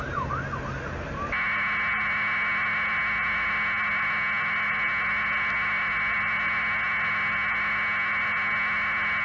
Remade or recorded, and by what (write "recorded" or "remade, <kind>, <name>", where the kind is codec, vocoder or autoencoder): recorded